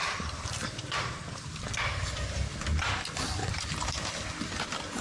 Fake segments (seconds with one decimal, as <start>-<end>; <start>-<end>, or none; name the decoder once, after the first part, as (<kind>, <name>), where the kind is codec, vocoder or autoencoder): 0.0-1.5 (vocoder, BigVGAN v2)